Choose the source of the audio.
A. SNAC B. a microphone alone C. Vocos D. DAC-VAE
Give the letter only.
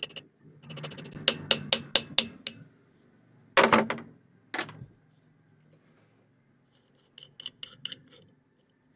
B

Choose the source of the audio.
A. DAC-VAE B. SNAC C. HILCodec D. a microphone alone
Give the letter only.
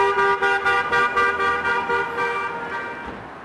D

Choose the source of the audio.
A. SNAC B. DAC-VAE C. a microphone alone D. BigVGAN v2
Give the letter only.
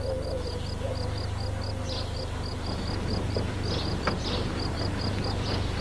C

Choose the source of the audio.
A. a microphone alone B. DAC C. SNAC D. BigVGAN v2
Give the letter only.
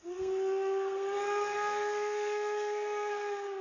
C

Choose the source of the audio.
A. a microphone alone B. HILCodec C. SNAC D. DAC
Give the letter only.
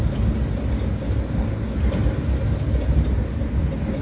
A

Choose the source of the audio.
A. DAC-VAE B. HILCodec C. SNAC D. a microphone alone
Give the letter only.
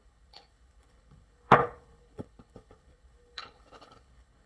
B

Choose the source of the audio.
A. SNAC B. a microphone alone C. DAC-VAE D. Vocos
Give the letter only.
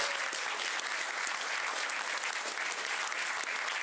B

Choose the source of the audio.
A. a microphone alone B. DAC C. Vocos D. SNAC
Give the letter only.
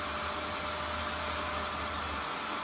A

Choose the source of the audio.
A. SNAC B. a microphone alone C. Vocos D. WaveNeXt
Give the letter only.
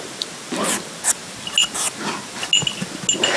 B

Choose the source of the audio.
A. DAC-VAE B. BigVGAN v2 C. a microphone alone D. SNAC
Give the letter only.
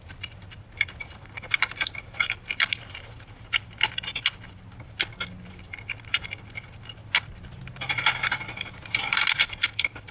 C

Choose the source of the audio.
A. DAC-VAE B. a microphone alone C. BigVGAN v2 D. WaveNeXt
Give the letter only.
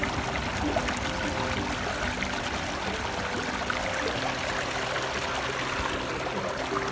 B